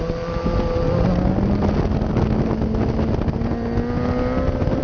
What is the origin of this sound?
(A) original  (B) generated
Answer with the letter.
A